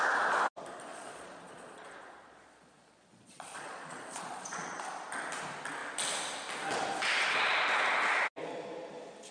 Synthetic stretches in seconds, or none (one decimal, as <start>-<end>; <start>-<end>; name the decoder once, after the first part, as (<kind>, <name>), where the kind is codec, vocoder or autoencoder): 0.9-4.8 (vocoder, Vocos)